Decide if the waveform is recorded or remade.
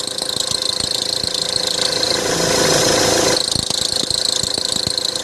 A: recorded